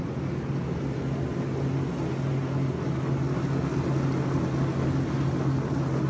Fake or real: real